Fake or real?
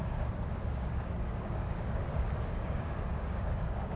fake